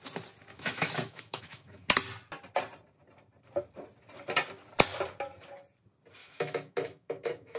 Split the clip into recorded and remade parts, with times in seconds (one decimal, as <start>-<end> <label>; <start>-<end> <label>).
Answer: 0.0-0.5 recorded; 0.5-1.9 remade; 1.9-6.2 recorded; 6.2-7.6 remade